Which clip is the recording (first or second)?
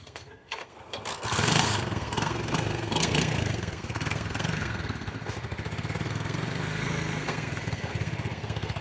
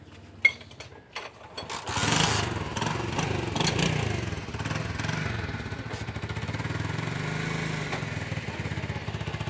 second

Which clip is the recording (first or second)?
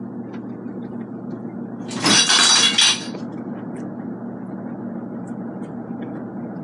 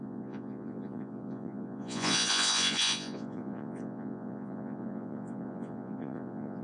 first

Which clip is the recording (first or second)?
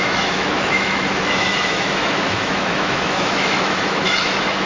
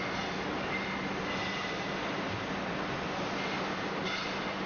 second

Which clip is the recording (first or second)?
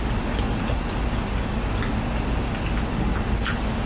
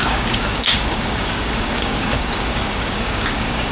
first